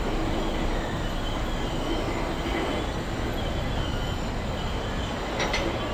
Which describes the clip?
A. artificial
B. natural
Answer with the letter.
B